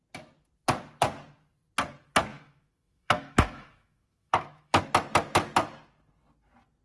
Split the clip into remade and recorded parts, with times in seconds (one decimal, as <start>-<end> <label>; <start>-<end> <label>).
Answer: 0.0-2.3 recorded; 2.3-4.8 remade; 4.8-6.8 recorded